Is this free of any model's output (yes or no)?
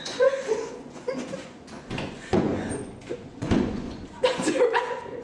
no